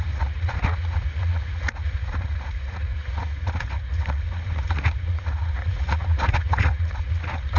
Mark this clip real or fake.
fake